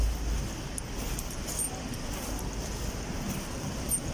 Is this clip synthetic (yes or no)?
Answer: no